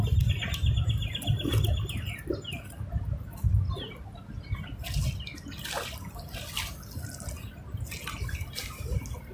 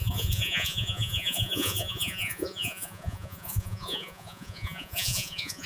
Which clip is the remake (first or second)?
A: second